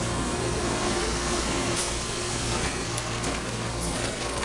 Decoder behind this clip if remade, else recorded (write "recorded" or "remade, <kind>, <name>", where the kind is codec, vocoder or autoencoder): remade, codec, SNAC